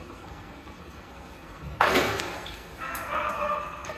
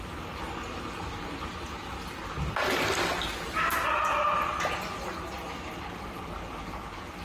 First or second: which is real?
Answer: second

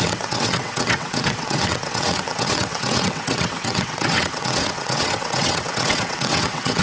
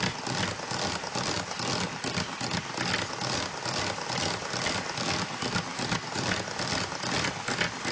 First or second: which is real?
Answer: second